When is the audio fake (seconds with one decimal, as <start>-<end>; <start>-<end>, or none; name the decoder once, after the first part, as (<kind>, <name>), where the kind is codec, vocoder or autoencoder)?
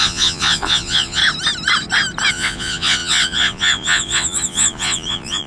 0.0-1.2 (vocoder, Vocos); 2.3-5.5